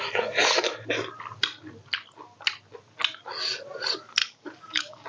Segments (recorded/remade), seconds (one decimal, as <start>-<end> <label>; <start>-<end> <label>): 0.0-4.2 recorded; 4.2-5.1 remade